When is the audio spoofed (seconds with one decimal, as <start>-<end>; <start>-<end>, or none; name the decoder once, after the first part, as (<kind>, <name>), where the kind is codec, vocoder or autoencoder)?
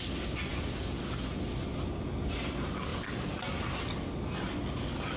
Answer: none